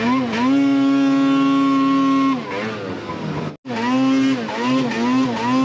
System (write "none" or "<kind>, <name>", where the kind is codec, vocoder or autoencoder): none